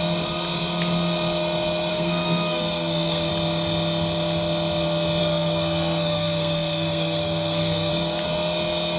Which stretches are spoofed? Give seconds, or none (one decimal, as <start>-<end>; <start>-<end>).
1.9-3.3; 5.2-7.9

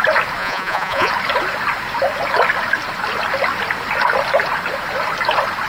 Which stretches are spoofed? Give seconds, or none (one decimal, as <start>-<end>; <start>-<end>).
0.4-1.1

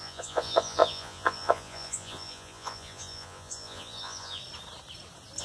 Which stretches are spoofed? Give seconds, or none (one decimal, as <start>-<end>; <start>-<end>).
0.0-4.4

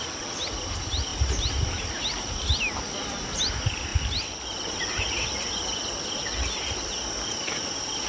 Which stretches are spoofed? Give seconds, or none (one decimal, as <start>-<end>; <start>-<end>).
none

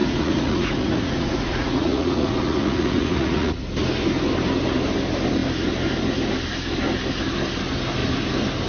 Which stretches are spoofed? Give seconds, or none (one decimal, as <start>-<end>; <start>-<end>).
0.0-3.6

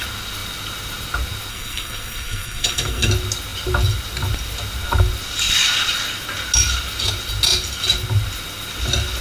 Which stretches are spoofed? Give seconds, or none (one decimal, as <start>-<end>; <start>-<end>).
1.5-3.1

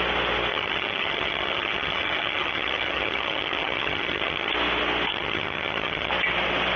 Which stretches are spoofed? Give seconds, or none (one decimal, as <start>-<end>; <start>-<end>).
0.5-4.5; 5.1-6.1